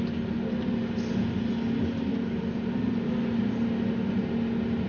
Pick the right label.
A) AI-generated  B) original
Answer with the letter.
B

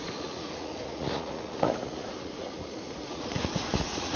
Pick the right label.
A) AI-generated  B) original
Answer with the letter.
A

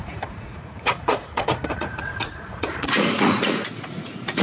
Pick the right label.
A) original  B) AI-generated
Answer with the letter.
B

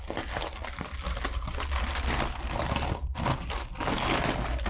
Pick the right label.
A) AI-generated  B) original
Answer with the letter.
B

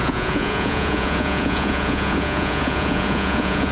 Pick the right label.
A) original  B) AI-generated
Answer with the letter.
B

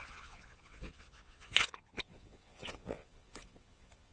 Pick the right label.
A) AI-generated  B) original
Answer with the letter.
A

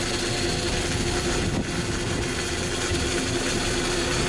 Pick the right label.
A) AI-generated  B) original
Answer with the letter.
B